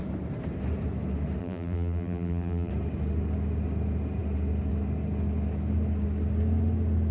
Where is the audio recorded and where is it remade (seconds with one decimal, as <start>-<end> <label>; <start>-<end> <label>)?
0.0-1.4 recorded; 1.4-2.7 remade; 2.7-7.1 recorded